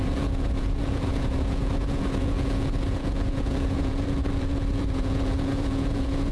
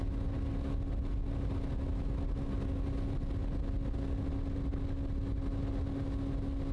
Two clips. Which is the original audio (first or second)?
second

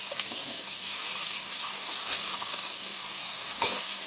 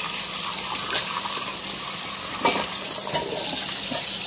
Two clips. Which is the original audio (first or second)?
second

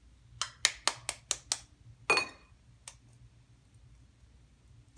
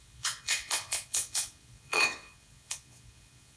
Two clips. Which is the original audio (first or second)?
first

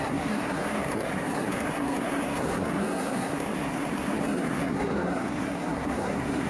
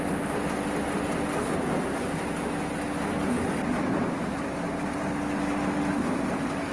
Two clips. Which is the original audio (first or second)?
second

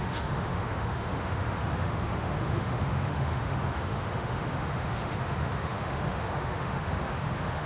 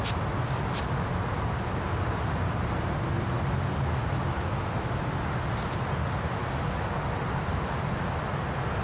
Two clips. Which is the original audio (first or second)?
second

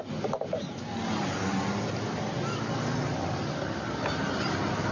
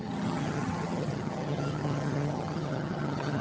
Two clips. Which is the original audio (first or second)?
first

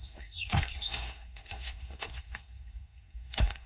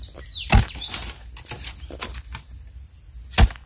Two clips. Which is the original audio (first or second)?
second